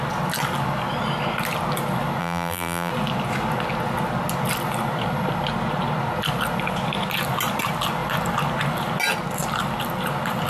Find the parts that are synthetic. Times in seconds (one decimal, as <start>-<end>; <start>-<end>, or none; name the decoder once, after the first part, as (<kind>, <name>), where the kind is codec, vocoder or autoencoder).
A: 2.2-2.9 (vocoder, BigVGAN v2)